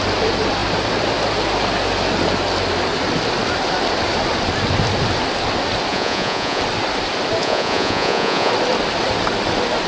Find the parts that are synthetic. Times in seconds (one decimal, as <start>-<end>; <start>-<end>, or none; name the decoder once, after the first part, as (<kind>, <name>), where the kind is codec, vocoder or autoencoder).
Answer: 5.9-6.6 (vocoder, Vocos); 7.4-8.5

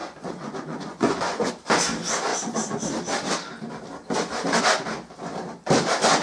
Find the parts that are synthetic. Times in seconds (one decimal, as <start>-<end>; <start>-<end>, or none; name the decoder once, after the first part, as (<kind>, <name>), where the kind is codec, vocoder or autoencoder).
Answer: 0.0-1.5 (vocoder, Vocos)